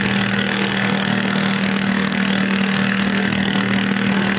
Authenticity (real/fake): fake